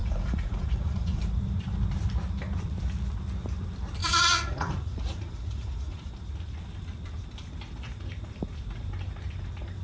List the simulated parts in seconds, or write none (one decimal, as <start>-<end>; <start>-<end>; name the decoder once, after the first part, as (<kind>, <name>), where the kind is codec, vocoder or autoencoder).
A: 0.0-1.2 (vocoder, Vocos); 4.0-6.1